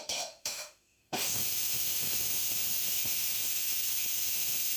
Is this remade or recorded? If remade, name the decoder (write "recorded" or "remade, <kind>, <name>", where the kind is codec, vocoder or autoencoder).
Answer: remade, autoencoder, DAC-VAE